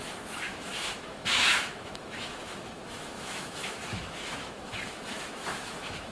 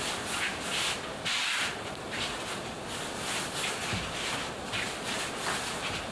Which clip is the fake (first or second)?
first